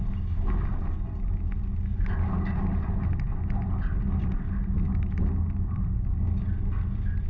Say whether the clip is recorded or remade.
recorded